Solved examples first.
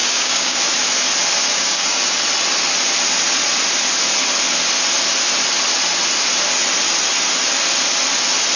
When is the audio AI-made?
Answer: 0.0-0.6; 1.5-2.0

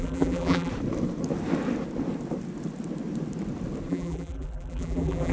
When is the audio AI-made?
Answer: 0.0-0.7; 3.9-5.3

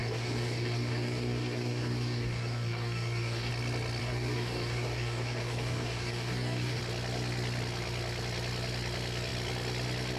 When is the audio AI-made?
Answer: 0.0-3.5; 4.0-6.8

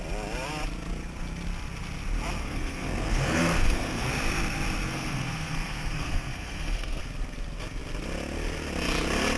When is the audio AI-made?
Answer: 2.4-4.1; 4.9-7.0